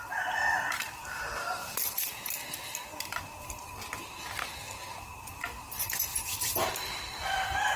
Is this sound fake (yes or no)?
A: no